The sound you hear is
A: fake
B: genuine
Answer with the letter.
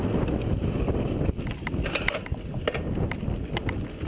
B